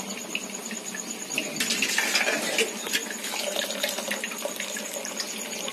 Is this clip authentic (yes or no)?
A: yes